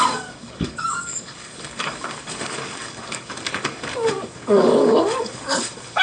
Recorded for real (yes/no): no